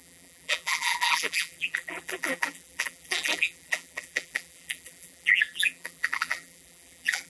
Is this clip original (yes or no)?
no